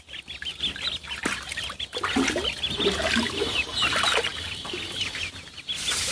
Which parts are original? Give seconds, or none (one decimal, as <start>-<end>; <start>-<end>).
0.0-6.1